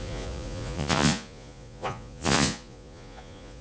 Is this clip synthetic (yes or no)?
yes